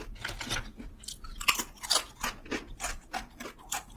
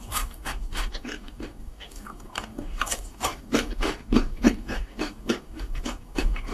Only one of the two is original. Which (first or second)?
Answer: first